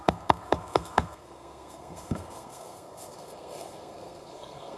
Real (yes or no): no